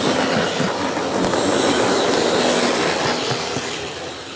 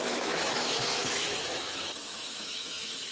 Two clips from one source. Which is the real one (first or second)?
first